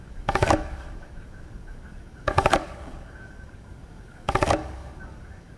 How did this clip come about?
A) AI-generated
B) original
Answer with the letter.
A